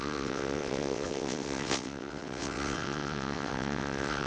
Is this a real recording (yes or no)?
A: no